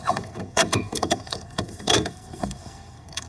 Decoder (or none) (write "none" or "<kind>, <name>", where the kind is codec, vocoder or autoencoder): codec, SNAC